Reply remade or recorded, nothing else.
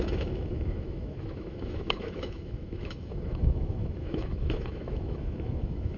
remade